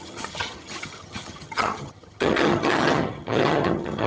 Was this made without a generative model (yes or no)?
no